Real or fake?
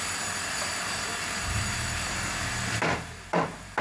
fake